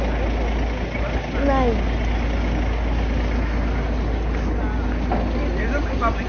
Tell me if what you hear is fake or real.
real